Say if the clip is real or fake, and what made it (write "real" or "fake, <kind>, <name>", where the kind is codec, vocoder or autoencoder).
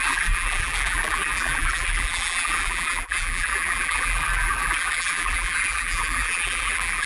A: fake, vocoder, BigVGAN v2